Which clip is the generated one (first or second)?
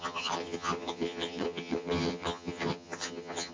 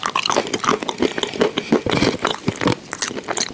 first